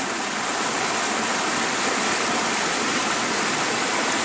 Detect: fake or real real